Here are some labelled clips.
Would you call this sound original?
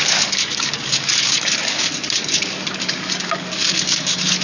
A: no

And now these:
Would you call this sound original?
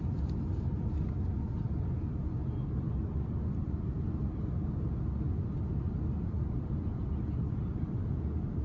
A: yes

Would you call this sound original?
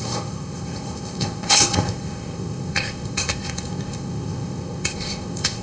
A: no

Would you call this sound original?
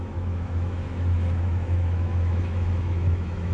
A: no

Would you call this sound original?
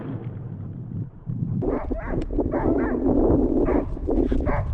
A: yes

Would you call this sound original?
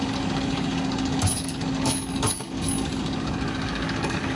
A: no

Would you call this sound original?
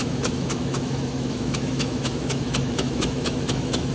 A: no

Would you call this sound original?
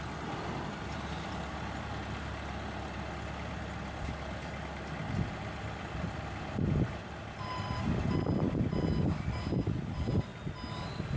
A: no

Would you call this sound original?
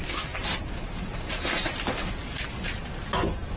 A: yes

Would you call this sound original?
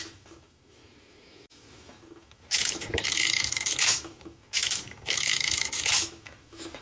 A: no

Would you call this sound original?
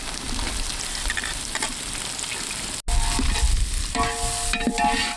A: yes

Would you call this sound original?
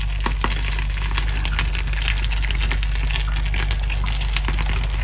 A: yes